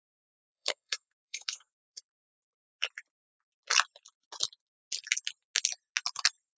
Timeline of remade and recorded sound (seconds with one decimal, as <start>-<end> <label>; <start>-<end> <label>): 0.0-2.0 remade; 2.0-6.6 recorded